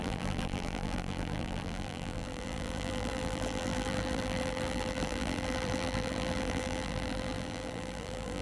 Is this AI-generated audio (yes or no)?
yes